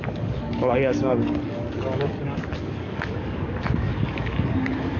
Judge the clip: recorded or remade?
remade